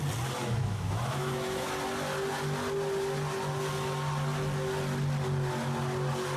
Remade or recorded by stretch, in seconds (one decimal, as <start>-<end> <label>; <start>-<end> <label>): 0.0-0.4 recorded; 0.4-1.7 remade; 1.7-6.4 recorded